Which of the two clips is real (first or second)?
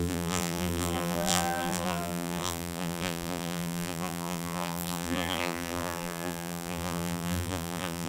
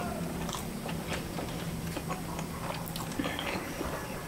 second